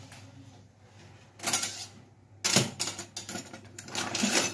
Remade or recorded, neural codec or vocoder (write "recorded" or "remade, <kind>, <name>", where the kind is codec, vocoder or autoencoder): recorded